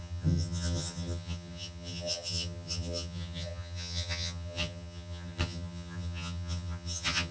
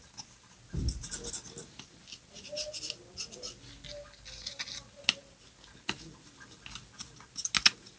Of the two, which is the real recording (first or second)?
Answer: second